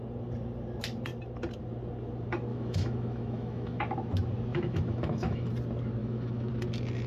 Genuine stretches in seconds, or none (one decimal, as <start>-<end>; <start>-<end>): 0.0-2.5; 3.8-4.5; 5.5-6.0; 6.5-7.1